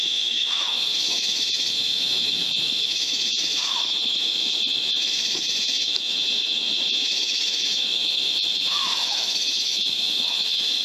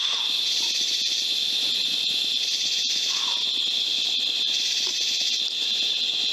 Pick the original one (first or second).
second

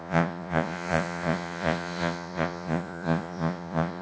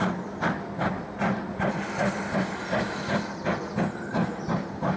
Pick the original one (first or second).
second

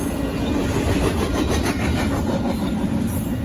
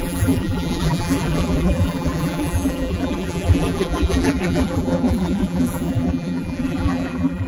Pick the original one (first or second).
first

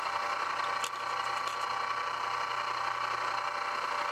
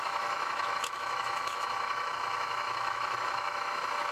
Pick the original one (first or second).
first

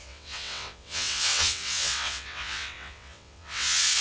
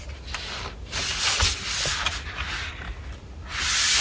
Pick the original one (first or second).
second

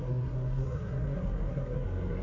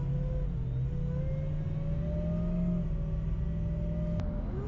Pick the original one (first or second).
second